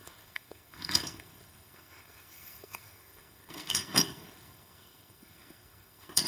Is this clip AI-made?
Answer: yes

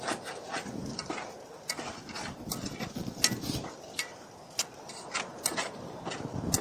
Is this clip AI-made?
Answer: no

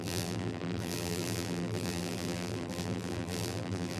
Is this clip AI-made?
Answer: yes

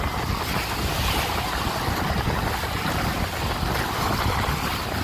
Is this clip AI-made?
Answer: no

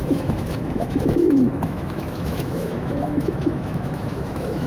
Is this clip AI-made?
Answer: yes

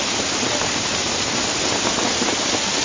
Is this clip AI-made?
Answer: no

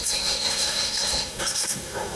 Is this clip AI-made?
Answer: yes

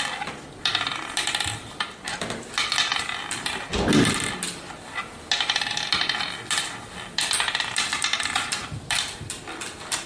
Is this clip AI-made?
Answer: no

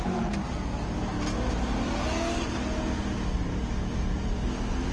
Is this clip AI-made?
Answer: no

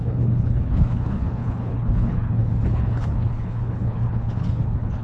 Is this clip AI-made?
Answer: yes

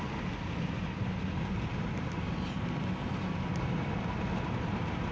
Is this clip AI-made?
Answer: no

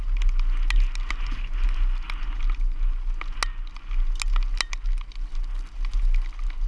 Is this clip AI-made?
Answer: no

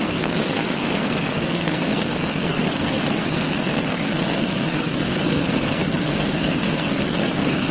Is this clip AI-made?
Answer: yes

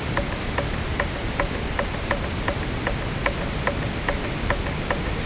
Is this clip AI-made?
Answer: no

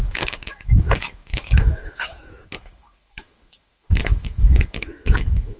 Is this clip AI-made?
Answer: yes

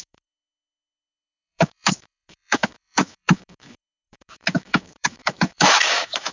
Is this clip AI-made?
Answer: yes